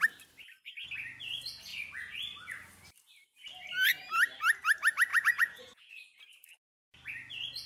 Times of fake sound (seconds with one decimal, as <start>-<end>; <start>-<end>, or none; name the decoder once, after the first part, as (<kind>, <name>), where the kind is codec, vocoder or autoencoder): 5.1-5.9 (vocoder, Vocos)